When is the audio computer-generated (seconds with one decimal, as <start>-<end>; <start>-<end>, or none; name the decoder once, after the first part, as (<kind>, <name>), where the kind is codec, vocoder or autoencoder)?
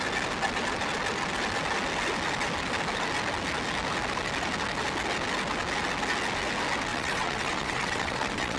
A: 6.9-8.6 (vocoder, WaveNeXt)